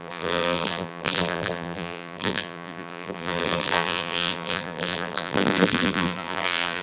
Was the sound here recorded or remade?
remade